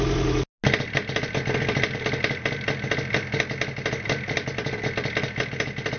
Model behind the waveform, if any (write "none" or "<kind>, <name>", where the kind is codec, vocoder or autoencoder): none